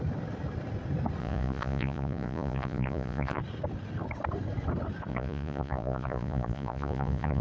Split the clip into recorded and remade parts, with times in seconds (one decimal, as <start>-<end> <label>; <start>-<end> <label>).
0.0-1.2 recorded; 1.2-3.4 remade; 3.4-5.1 recorded; 5.1-7.4 remade